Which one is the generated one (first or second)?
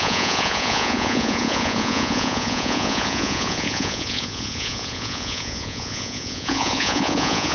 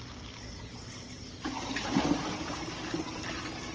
first